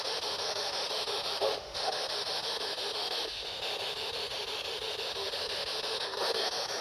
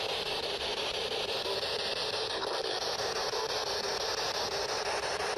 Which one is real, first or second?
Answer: second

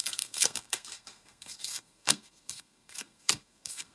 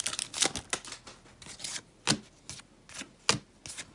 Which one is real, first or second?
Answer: second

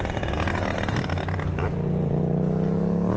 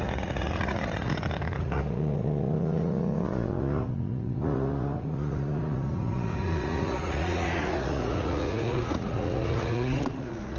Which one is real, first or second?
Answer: first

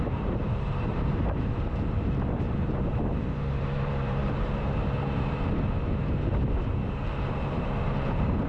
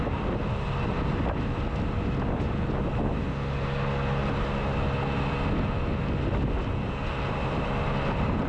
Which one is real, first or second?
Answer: second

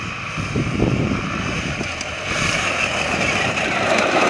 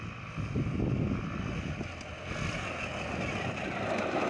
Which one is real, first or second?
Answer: second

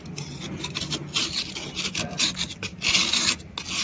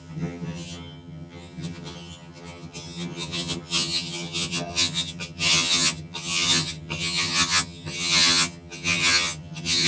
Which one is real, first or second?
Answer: first